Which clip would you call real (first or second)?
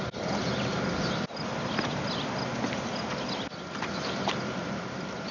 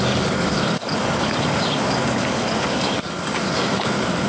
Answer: first